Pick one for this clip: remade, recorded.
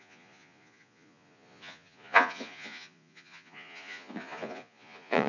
remade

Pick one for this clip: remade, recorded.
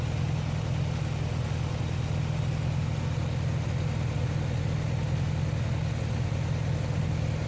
recorded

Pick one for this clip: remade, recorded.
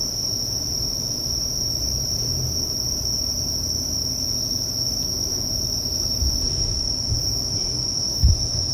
recorded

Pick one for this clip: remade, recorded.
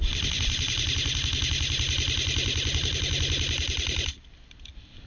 recorded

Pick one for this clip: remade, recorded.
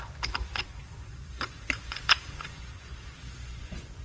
remade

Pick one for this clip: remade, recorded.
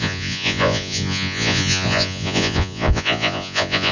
remade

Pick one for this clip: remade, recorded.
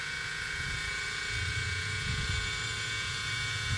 remade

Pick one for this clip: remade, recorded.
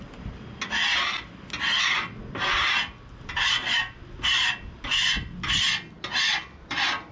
recorded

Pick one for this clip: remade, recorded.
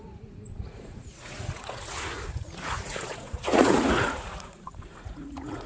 remade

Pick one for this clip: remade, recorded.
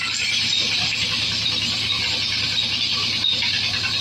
recorded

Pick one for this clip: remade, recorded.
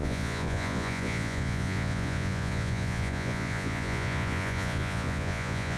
remade